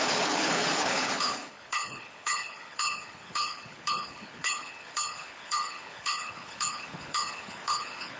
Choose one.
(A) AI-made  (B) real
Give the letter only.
A